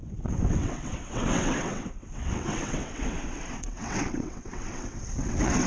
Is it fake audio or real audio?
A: fake